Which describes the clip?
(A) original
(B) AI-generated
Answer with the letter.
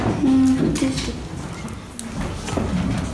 A